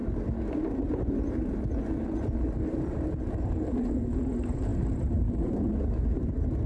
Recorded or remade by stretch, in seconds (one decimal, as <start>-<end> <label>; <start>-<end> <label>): 0.0-6.7 recorded